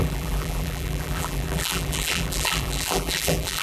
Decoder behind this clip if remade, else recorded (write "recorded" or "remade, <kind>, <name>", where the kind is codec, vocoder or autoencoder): remade, vocoder, BigVGAN v2